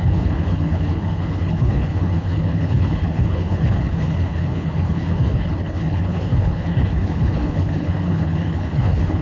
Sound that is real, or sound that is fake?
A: fake